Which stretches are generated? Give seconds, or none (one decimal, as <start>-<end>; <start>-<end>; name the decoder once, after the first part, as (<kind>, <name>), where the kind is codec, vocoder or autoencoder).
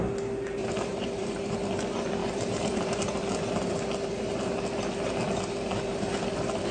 0.6-1.5 (vocoder, BigVGAN v2); 2.2-3.5